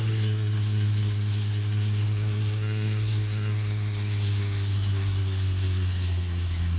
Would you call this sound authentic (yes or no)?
no